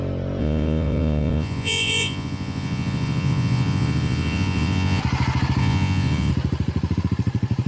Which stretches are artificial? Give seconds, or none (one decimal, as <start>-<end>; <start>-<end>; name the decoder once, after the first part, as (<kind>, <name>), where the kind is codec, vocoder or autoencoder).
0.4-5.0 (vocoder, Vocos); 5.6-6.3